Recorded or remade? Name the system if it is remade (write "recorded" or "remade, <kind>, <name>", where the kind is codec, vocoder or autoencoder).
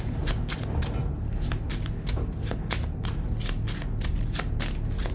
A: recorded